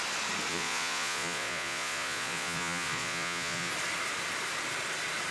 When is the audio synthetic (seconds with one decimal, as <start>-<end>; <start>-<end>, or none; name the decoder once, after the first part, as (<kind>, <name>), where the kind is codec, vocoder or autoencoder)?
0.5-3.7 (vocoder, Vocos)